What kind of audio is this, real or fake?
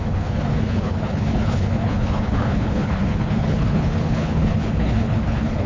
fake